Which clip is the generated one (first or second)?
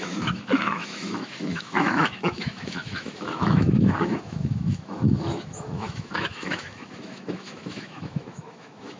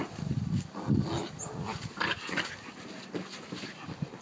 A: first